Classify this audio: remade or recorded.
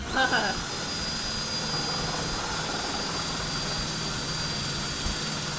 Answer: recorded